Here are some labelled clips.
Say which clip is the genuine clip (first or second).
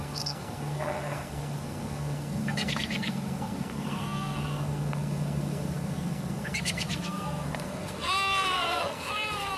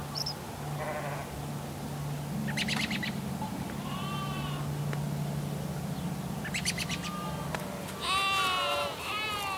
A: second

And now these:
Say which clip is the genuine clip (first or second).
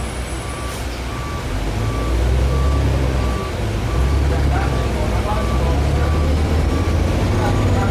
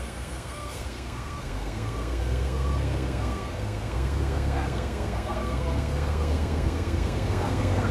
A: first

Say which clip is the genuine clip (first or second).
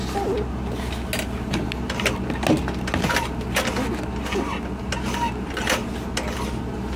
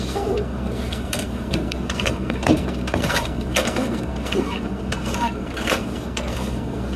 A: first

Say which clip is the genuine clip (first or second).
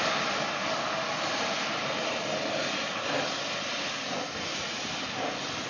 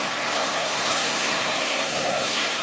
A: first